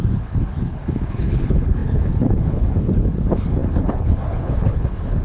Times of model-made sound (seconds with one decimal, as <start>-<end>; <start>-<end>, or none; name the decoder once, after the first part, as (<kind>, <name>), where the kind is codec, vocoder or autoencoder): 0.0-5.2 (codec, HILCodec)

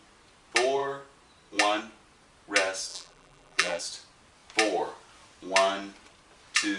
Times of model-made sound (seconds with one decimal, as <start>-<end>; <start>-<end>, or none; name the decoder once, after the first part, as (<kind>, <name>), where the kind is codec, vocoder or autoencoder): 2.9-3.8 (vocoder, BigVGAN v2)